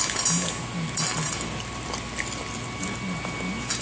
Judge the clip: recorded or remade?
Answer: recorded